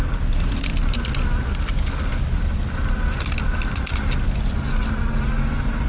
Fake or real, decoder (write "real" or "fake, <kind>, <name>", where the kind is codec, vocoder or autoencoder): real